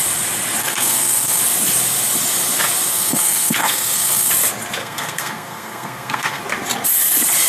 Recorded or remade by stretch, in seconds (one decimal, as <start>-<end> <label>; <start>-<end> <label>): 0.0-0.6 recorded; 0.6-1.4 remade; 1.4-2.9 recorded; 2.9-4.3 remade; 4.3-4.8 recorded; 4.8-6.4 remade; 6.4-7.5 recorded